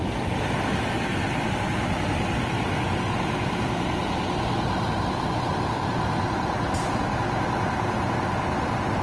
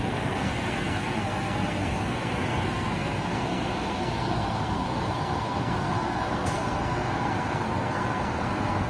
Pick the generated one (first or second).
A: second